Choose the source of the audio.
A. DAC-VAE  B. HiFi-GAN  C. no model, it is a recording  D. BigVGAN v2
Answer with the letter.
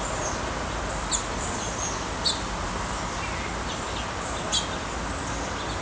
C